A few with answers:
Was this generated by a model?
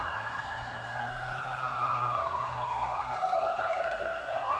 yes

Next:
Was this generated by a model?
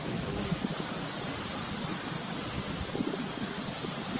no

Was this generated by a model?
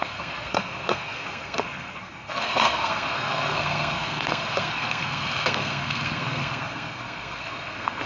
yes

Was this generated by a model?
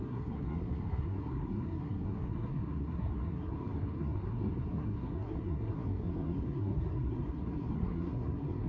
yes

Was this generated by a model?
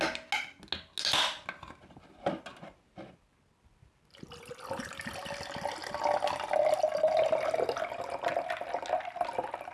no